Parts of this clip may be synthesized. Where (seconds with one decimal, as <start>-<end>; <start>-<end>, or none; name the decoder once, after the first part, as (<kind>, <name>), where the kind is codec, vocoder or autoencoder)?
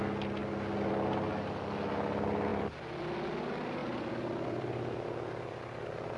2.5-3.0 (vocoder, BigVGAN v2); 3.8-5.6